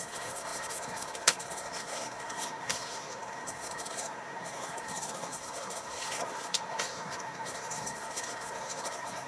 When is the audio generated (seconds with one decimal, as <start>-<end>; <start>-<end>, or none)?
0.0-9.3